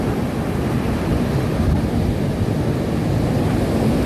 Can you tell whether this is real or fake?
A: real